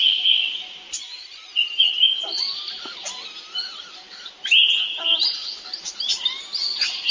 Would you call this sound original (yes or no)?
yes